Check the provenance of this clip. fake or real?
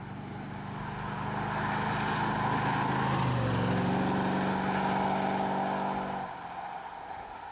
real